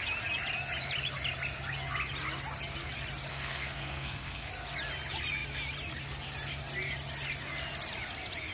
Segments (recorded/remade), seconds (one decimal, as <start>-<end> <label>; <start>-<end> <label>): 0.0-3.3 recorded; 3.3-4.5 remade; 4.5-8.5 recorded

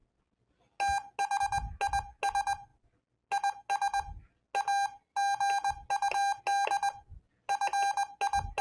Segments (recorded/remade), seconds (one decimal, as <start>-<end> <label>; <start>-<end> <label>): 0.0-8.6 recorded

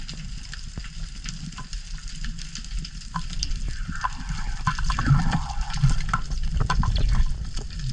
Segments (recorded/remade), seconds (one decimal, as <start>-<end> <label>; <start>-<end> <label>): 0.0-7.9 recorded

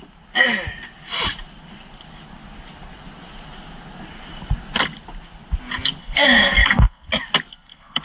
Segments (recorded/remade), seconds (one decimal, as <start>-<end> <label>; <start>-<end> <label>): 0.0-6.0 recorded; 6.0-7.1 remade; 7.1-7.5 recorded; 7.5-8.0 remade

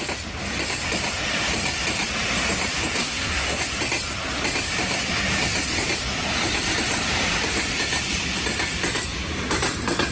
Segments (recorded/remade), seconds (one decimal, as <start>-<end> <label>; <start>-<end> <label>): 0.0-3.0 recorded; 3.0-3.6 remade; 3.6-10.1 recorded